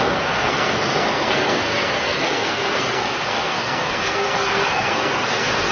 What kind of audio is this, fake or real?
fake